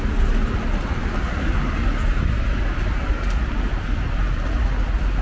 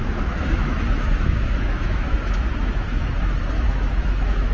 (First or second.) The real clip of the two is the first